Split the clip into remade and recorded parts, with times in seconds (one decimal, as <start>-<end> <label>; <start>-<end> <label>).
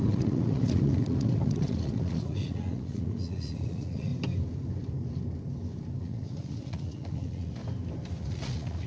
0.0-4.1 remade; 4.1-6.0 recorded; 6.0-7.6 remade; 7.6-8.2 recorded; 8.2-8.9 remade